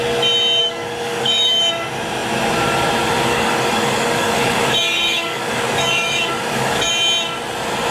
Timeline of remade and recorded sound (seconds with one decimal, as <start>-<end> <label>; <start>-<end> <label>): 0.0-0.6 recorded; 0.6-1.6 remade; 1.6-3.3 recorded; 3.3-6.9 remade; 6.9-7.9 recorded